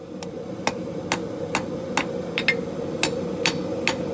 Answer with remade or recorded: recorded